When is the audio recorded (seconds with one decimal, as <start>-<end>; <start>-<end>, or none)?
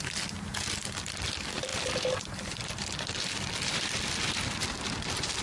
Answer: 0.5-1.2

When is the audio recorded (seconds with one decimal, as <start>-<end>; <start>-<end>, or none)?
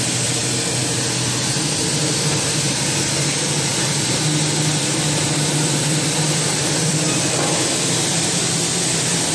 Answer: 0.4-3.3; 3.7-4.8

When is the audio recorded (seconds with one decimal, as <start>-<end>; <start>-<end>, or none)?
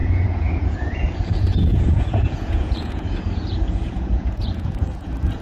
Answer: none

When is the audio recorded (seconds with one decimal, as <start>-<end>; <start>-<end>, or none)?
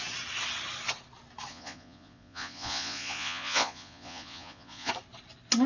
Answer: 0.0-1.5; 4.9-5.7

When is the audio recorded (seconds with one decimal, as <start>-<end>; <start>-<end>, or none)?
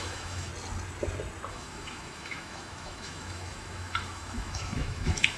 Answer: 0.5-1.5